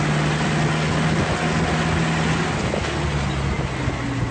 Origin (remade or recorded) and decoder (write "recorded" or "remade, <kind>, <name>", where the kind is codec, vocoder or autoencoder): recorded